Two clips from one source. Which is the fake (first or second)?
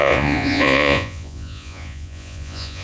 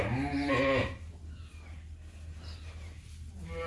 first